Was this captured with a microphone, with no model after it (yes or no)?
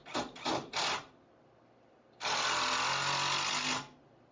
yes